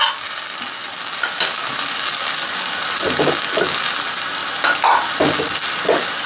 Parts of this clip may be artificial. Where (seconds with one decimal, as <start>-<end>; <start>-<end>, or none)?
none